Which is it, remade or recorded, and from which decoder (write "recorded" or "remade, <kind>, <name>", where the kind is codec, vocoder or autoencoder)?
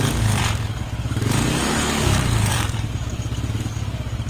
remade, codec, DAC